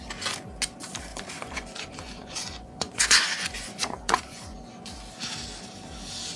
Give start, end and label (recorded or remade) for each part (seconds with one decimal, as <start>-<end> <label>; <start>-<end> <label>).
0.0-1.1 recorded; 1.1-4.9 remade; 4.9-6.4 recorded